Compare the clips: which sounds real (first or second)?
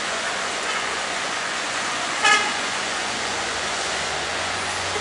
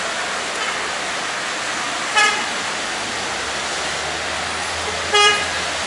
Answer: second